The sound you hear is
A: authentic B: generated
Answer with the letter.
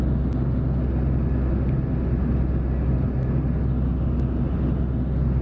A